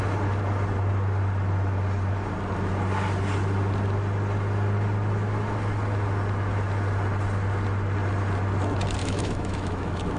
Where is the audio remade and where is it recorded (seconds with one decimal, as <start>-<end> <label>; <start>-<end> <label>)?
0.0-9.0 recorded; 9.0-10.2 remade

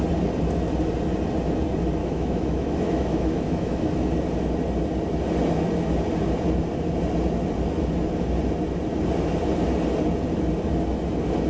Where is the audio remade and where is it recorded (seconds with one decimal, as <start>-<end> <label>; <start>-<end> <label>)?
0.0-2.0 recorded; 2.0-3.9 remade; 3.9-11.5 recorded

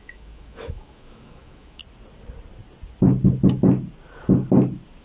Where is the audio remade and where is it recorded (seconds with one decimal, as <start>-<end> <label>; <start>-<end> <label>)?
0.0-1.8 remade; 1.8-5.0 recorded